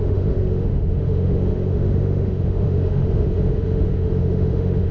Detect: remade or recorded remade